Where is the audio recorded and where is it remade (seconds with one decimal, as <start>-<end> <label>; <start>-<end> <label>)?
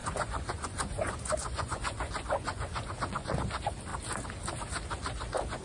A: 0.0-3.4 remade; 3.4-5.6 recorded